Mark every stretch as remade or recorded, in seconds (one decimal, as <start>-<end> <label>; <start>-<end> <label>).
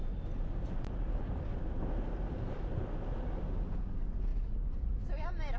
0.0-5.6 recorded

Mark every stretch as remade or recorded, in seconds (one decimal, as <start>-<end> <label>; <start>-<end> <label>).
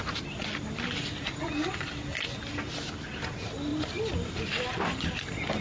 0.0-3.7 recorded; 3.7-5.0 remade; 5.0-5.6 recorded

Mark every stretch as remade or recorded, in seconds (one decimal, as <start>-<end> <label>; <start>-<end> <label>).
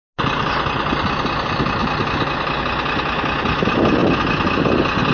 0.0-5.1 recorded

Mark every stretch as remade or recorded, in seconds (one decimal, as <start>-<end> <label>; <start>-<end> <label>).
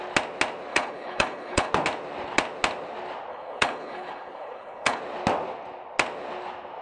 0.0-0.7 recorded; 0.7-1.7 remade; 1.7-3.3 recorded; 3.3-5.0 remade; 5.0-6.8 recorded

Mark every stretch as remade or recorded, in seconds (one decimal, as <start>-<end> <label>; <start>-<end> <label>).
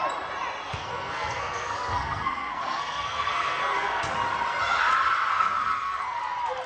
0.0-0.7 recorded; 0.7-4.1 remade; 4.1-5.3 recorded; 5.3-6.2 remade; 6.2-6.7 recorded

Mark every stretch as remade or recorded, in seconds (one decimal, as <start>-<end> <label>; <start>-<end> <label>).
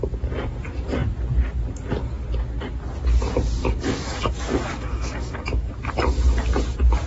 0.0-3.6 recorded; 3.6-5.7 remade; 5.7-7.1 recorded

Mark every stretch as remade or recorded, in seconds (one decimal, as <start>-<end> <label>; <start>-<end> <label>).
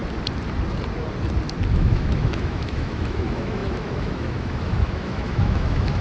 0.0-1.7 recorded; 1.7-6.0 remade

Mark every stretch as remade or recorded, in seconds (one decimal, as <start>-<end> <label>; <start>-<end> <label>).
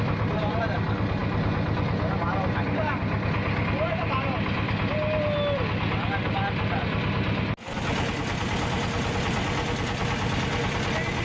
0.0-11.2 recorded